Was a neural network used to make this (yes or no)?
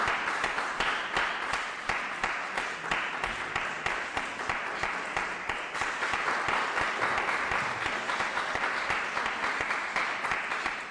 no